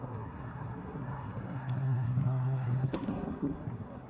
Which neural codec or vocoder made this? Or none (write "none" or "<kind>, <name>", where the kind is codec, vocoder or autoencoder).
codec, SNAC